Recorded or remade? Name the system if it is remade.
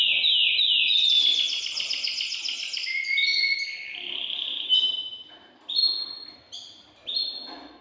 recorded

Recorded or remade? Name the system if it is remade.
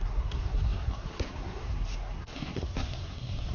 remade, codec, SNAC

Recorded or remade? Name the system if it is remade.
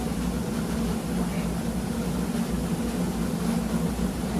recorded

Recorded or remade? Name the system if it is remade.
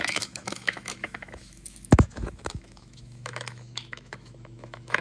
remade, autoencoder, DAC-VAE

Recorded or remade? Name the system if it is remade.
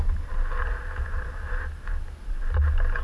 recorded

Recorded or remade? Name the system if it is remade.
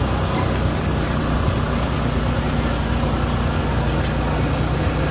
recorded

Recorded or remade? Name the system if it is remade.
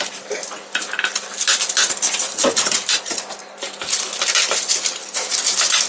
recorded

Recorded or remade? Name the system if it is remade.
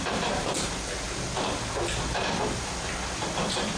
recorded